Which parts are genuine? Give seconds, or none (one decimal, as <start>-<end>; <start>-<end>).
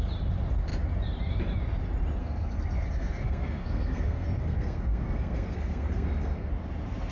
0.0-2.2; 6.5-7.1